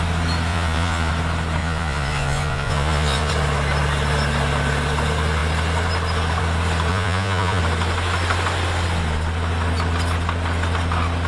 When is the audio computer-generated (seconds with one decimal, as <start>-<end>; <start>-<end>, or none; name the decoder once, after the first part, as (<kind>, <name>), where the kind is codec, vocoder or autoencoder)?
0.5-1.1 (vocoder, Vocos); 1.6-3.3; 6.9-7.6